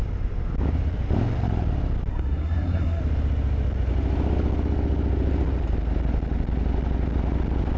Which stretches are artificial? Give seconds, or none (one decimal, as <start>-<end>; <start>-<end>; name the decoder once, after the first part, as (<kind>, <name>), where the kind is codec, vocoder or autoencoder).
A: 2.1-3.0 (codec, SNAC)